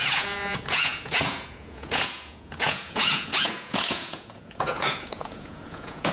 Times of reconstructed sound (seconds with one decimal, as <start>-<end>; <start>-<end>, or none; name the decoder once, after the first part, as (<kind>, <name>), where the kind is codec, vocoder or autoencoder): 0.0-6.1 (vocoder, Vocos)